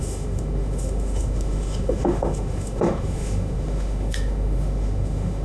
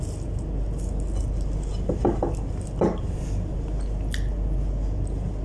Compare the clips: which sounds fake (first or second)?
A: first